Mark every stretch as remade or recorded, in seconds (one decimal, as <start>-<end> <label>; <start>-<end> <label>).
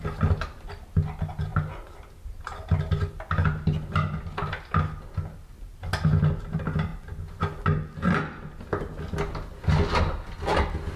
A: 0.0-11.0 recorded